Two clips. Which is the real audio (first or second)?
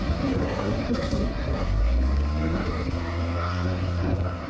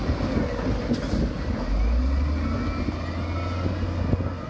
second